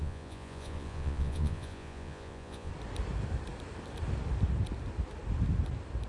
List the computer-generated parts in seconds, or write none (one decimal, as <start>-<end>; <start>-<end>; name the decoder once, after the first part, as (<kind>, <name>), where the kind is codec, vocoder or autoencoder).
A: 0.0-2.7 (vocoder, Vocos)